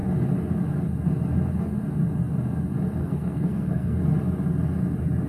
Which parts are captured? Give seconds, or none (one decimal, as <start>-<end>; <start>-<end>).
0.0-3.0; 4.0-5.3